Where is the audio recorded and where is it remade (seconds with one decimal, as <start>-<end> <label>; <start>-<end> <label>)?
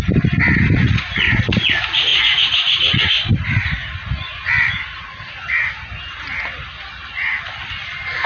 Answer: 0.0-0.8 recorded; 0.8-1.7 remade; 1.7-2.1 recorded; 2.1-3.0 remade; 3.0-8.3 recorded